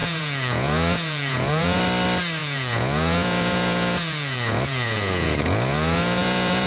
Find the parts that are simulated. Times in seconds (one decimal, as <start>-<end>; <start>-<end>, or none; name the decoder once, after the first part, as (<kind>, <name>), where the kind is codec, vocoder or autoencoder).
0.0-1.8 (vocoder, Vocos); 2.4-6.7